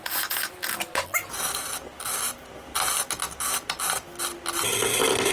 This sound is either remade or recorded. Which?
recorded